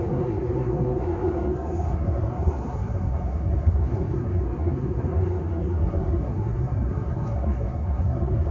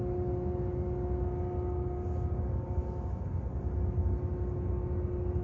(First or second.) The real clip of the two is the second